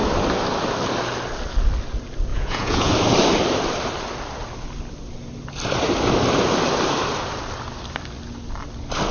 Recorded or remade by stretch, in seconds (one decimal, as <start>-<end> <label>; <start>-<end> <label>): 0.0-2.3 recorded; 2.3-2.9 remade; 2.9-9.1 recorded